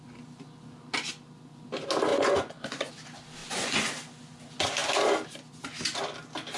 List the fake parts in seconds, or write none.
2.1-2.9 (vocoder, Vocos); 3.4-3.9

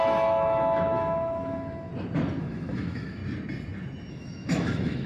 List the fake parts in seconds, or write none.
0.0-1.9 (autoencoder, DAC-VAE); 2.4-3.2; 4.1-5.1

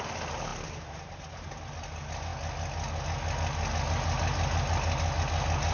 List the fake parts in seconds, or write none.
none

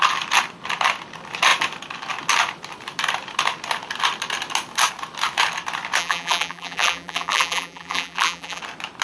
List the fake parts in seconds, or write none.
6.0-8.6 (vocoder, BigVGAN v2)

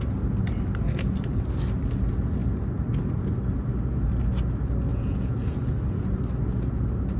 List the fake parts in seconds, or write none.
4.9-5.7 (vocoder, Vocos)

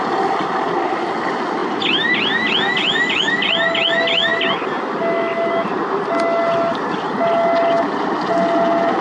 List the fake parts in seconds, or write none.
1.6-2.5 (vocoder, BigVGAN v2)

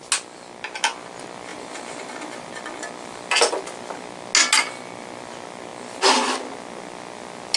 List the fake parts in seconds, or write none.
1.5-2.5 (vocoder, BigVGAN v2)

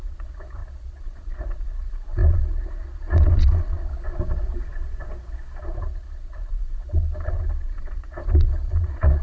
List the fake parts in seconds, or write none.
0.0-3.9 (vocoder, Vocos); 5.6-9.2